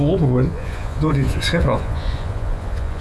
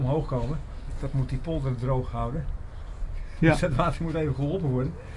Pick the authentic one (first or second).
second